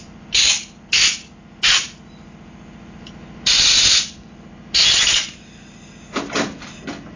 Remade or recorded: recorded